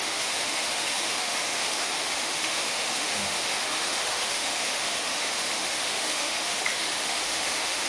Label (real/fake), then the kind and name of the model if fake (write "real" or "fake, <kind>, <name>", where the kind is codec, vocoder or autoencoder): fake, autoencoder, DAC-VAE